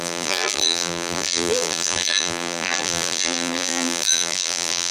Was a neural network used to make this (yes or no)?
yes